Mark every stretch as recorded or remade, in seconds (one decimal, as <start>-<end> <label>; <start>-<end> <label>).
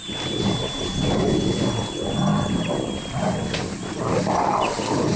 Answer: 0.0-2.3 recorded; 2.3-4.2 remade; 4.2-5.2 recorded